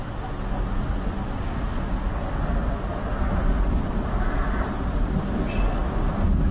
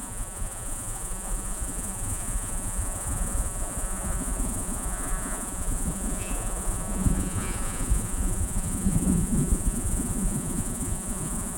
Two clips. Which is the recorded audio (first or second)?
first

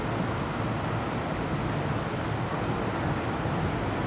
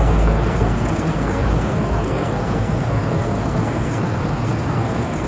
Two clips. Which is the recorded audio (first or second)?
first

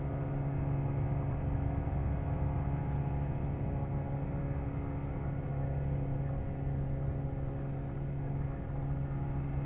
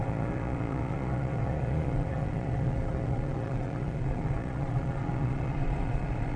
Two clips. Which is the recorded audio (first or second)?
first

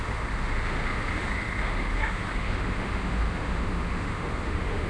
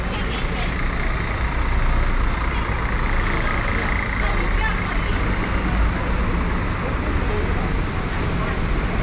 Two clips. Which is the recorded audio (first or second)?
second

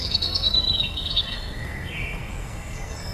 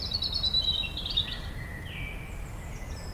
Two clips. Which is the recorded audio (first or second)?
second